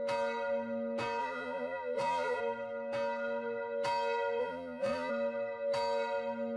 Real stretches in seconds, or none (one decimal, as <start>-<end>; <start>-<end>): 0.0-1.2; 2.4-4.4; 5.1-6.6